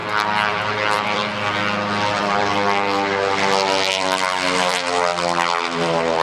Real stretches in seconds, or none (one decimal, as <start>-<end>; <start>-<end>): 0.0-0.5; 1.2-2.1; 2.5-4.0; 5.1-5.6